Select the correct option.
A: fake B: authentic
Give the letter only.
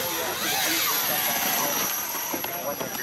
B